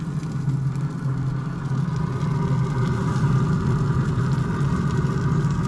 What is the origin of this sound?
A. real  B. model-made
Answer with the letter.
A